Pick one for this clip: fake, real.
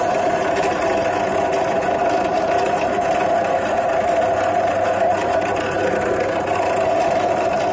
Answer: real